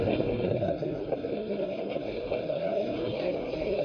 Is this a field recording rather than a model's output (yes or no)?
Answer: no